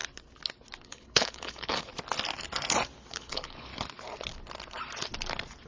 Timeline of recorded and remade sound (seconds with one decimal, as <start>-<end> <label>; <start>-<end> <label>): 0.0-0.8 recorded; 0.8-1.9 remade; 1.9-3.1 recorded; 3.1-3.7 remade; 3.7-5.7 recorded